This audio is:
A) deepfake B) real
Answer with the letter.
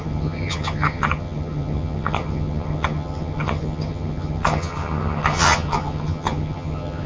A